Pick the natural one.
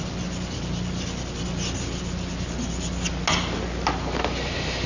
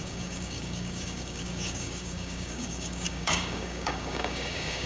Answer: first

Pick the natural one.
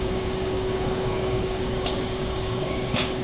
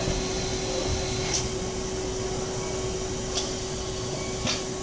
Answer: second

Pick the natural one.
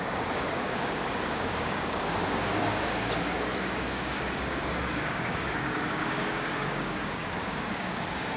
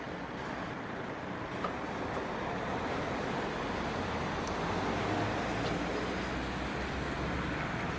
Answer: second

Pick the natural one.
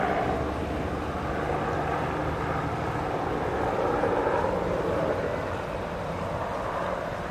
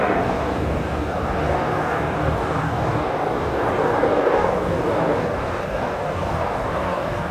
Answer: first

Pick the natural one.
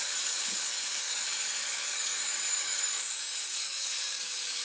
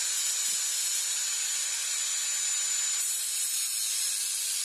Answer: second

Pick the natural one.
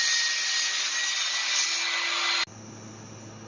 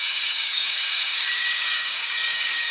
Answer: first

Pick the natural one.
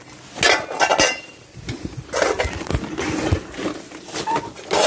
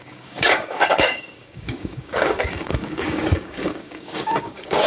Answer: first